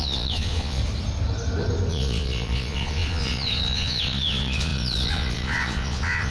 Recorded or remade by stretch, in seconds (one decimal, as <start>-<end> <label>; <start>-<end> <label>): 0.0-0.8 remade; 0.8-1.9 recorded; 1.9-6.3 remade